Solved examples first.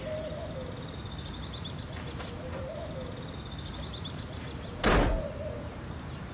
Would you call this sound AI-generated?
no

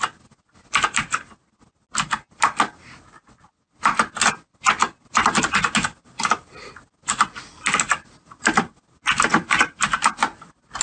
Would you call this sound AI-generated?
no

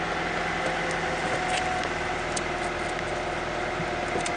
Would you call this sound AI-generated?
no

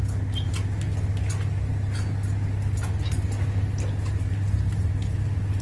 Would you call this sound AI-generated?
no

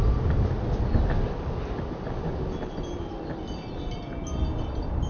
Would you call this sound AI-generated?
no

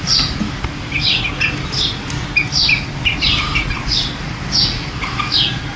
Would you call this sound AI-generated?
no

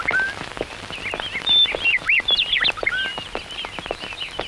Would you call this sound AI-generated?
no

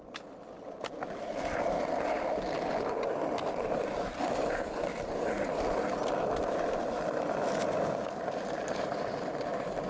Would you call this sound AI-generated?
no